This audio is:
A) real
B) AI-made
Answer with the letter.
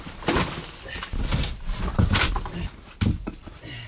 A